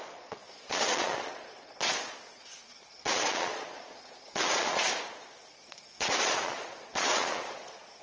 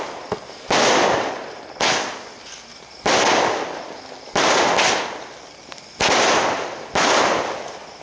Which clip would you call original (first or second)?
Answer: second